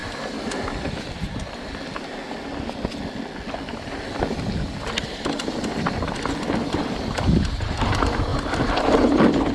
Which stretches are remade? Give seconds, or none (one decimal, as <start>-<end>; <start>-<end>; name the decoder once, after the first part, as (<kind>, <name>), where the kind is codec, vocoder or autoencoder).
0.0-1.4 (vocoder, BigVGAN v2)